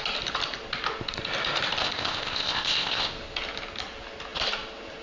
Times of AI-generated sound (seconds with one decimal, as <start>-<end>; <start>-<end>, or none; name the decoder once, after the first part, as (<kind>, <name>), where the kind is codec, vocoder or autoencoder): 1.8-3.1 (codec, ZipCodec)